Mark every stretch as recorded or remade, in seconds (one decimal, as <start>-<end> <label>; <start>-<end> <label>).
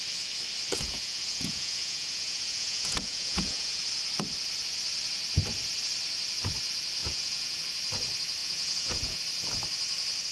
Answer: 0.0-0.7 recorded; 0.7-3.8 remade; 3.8-7.0 recorded; 7.0-7.6 remade; 7.6-8.4 recorded; 8.4-9.2 remade; 9.2-10.3 recorded